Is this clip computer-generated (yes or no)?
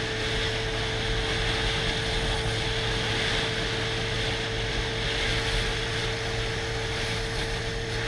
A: no